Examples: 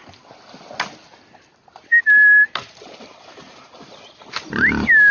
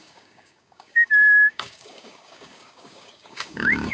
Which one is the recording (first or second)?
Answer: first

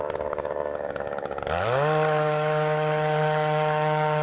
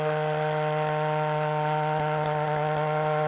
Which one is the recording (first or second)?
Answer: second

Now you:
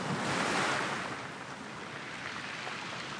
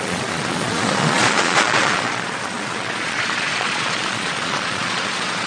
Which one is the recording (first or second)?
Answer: first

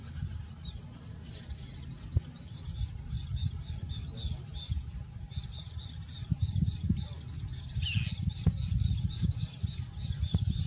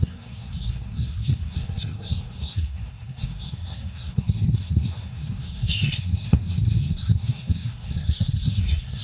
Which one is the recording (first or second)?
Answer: first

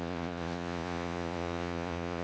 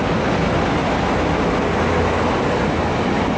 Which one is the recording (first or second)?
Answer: second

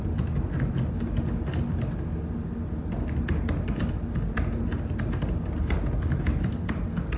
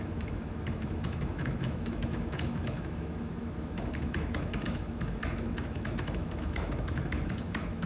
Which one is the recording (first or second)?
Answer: first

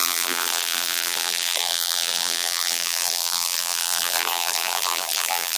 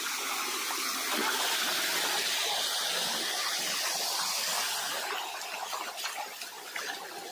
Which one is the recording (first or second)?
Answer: second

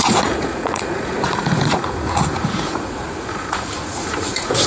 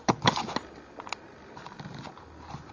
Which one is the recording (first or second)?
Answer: second